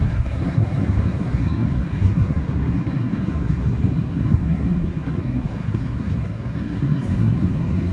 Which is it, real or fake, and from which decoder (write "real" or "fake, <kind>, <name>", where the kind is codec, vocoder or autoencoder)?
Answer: fake, codec, SNAC